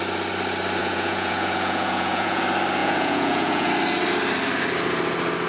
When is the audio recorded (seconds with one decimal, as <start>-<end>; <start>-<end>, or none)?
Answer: 0.0-0.8; 2.4-2.8; 3.7-5.5